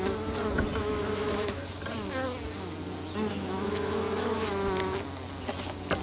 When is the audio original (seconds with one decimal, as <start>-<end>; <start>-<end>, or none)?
0.0-0.8; 1.6-3.3; 4.5-6.0